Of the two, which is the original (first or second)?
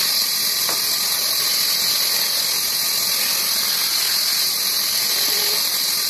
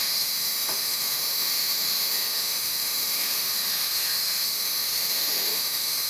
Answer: first